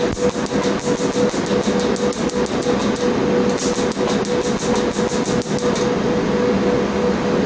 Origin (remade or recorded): recorded